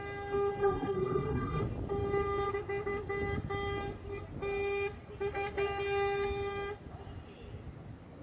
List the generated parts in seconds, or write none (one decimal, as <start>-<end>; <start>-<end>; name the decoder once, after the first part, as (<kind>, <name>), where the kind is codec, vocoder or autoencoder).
0.6-1.6 (codec, SNAC)